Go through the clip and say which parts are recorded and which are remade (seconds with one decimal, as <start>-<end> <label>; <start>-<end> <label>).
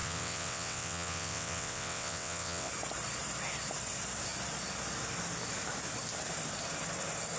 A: 0.0-2.7 remade; 2.7-7.4 recorded